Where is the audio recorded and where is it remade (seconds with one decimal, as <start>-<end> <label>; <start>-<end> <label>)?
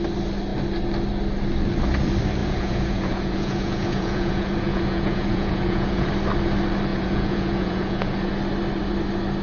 0.0-2.4 recorded; 2.4-6.1 remade; 6.1-6.9 recorded; 6.9-8.3 remade; 8.3-9.4 recorded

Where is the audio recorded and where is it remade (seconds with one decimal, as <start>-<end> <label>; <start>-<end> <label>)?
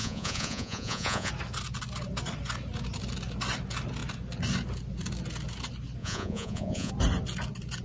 0.0-1.3 remade; 1.3-6.0 recorded; 6.0-6.9 remade; 6.9-7.8 recorded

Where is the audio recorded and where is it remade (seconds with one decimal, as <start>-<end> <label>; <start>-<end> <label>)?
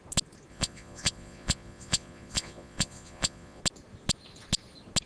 0.0-0.5 recorded; 0.5-3.6 remade; 3.6-5.1 recorded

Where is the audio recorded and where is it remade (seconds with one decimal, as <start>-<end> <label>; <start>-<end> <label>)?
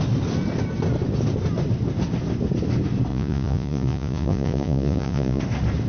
0.0-3.1 recorded; 3.1-5.4 remade; 5.4-5.9 recorded